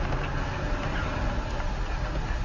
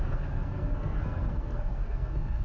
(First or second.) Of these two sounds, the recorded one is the first